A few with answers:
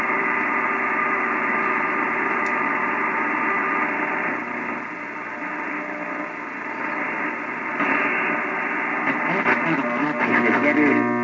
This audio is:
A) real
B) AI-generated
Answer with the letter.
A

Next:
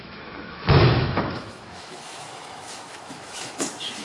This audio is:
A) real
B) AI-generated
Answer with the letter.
B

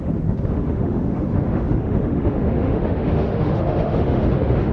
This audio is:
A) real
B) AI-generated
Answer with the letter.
B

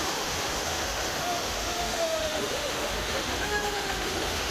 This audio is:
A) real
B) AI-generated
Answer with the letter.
B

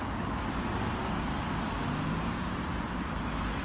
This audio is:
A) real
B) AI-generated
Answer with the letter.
A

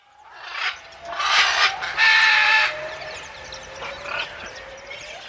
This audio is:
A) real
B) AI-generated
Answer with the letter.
A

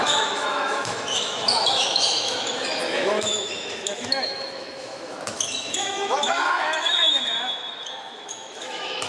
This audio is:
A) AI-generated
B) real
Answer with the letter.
A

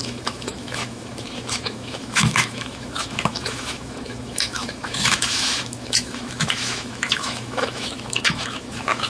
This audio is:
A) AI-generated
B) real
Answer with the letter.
A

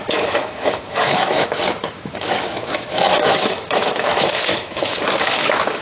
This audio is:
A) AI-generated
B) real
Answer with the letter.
A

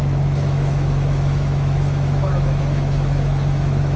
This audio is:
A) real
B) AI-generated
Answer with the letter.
B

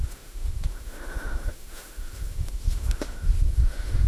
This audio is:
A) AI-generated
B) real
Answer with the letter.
A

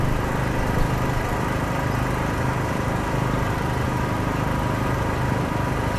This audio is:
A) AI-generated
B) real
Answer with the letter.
B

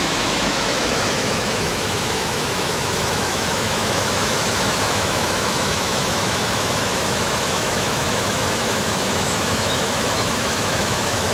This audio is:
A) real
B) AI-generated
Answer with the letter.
B